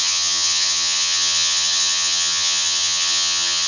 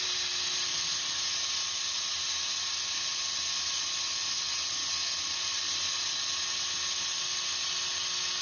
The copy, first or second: first